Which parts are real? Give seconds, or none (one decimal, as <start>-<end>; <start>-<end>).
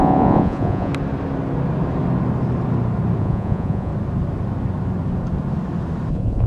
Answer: 0.9-3.2; 3.9-6.1